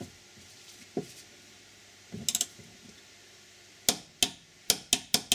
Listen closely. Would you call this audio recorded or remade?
recorded